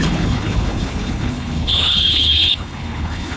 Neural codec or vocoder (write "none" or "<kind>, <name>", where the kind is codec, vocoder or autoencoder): codec, HILCodec